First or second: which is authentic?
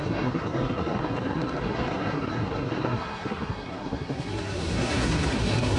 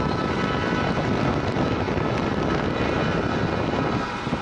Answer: second